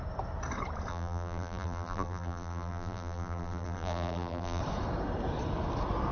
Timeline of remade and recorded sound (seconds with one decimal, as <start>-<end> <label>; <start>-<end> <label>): 0.0-0.9 recorded; 0.9-4.6 remade; 4.6-6.1 recorded